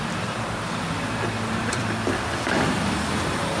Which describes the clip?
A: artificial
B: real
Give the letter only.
A